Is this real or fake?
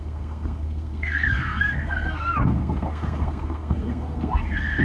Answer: fake